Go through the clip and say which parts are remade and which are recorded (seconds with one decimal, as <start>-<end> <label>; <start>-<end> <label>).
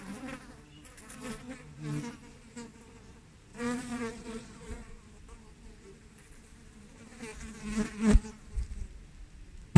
0.0-3.5 recorded; 3.5-4.9 remade; 4.9-9.8 recorded